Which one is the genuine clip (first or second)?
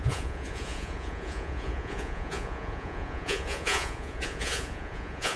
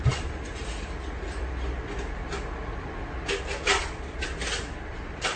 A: second